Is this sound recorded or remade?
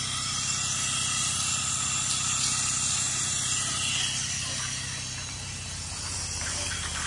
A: recorded